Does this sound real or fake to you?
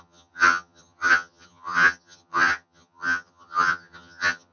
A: fake